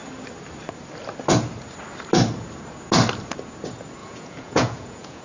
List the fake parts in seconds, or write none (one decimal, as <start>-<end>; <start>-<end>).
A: 4.0-5.2